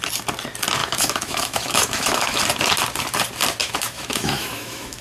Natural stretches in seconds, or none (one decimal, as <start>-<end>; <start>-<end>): 0.0-0.8; 2.4-3.6